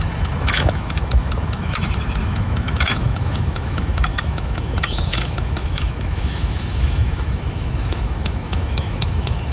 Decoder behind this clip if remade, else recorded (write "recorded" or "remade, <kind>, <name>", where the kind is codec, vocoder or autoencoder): remade, autoencoder, DAC-VAE